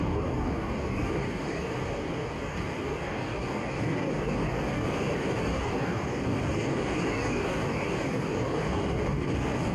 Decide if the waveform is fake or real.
fake